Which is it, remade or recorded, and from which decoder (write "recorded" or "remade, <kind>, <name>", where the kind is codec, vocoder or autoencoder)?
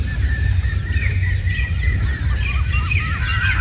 recorded